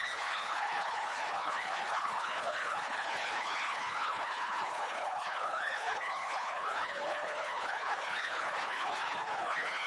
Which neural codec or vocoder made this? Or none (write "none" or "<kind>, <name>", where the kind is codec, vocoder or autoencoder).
codec, HILCodec